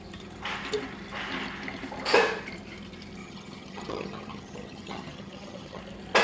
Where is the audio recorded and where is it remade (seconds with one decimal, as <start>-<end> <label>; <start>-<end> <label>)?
0.0-3.2 recorded; 3.2-5.8 remade; 5.8-6.2 recorded